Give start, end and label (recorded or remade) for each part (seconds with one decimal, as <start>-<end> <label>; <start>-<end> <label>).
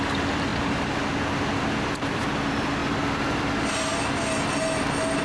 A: 0.0-5.2 recorded